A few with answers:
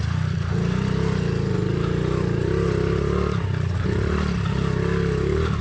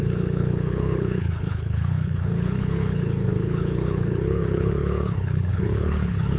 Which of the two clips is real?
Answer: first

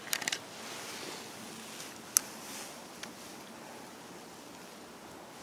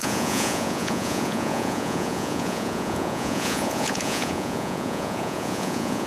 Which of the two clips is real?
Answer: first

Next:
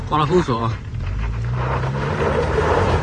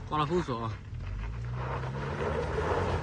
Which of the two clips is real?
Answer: second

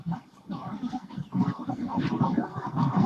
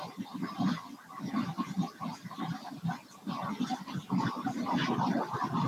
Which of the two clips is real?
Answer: second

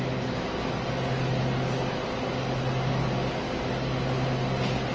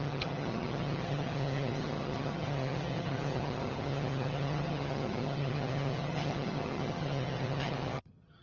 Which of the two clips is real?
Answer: first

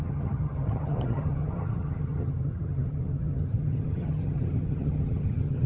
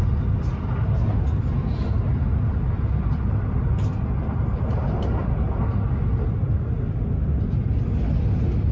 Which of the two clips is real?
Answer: second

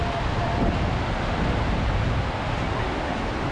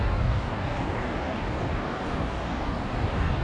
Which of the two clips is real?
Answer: first